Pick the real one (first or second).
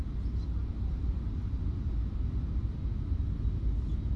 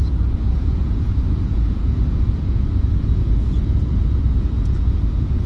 first